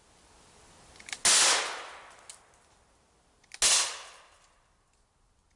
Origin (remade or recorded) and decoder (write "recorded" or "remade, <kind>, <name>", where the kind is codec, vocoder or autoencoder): recorded